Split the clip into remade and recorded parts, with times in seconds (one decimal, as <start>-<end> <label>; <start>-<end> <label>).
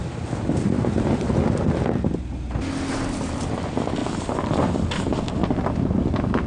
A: 0.0-0.8 remade; 0.8-4.0 recorded; 4.0-5.3 remade; 5.3-6.5 recorded